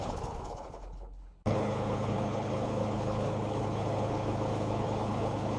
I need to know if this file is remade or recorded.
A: remade